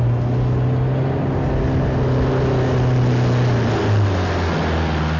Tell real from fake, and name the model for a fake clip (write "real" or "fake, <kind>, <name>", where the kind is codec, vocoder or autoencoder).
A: real